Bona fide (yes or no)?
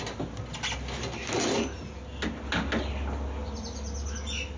yes